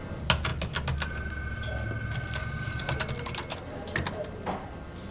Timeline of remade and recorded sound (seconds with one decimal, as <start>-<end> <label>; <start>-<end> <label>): 0.0-2.4 recorded; 2.4-3.0 remade; 3.0-5.1 recorded